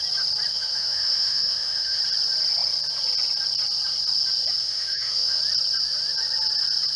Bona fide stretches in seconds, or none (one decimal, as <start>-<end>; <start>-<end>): 0.0-0.5; 2.0-4.6; 5.4-7.0